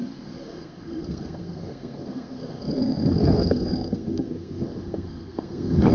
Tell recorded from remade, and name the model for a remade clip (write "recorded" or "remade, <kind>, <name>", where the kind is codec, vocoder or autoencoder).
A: remade, codec, SNAC